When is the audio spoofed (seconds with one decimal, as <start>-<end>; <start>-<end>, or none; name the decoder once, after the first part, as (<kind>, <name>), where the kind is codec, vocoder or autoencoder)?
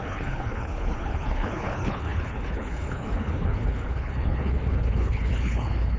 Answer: 0.0-6.0 (codec, HILCodec)